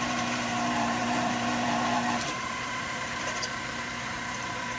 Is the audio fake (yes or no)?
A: yes